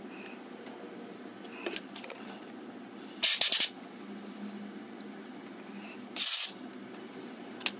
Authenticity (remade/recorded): recorded